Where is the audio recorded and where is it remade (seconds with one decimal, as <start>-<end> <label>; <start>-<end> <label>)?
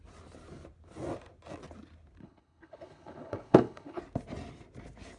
0.0-2.2 recorded; 2.2-4.0 remade; 4.0-5.2 recorded